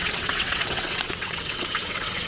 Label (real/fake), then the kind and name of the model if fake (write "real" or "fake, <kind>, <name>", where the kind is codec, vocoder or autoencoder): fake, vocoder, WaveNeXt